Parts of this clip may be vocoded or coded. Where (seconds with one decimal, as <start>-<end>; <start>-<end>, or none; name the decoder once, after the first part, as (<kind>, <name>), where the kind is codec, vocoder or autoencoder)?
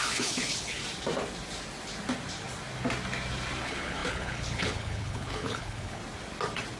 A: 0.0-0.8 (codec, HILCodec); 3.6-6.0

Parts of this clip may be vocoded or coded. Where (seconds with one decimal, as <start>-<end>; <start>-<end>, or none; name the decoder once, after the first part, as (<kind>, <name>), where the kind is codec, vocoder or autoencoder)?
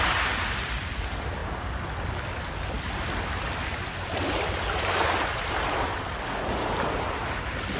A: none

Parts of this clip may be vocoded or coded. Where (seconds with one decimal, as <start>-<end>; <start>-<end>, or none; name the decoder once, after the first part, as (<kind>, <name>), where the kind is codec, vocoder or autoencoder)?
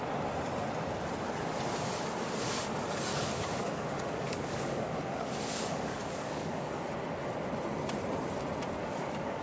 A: 3.1-6.8 (codec, DAC); 8.8-9.4